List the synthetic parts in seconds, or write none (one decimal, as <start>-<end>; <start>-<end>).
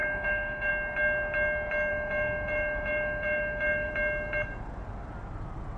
0.0-0.7; 1.9-3.9